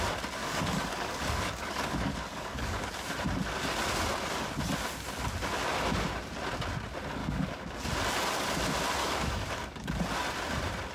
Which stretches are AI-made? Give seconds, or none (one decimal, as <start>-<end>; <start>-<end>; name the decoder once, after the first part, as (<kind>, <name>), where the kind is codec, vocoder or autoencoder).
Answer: 0.4-2.9 (codec, DAC); 7.2-7.7; 9.0-9.9